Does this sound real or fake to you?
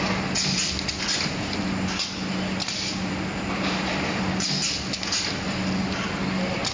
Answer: real